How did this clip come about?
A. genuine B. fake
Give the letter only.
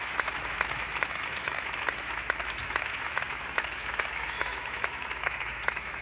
B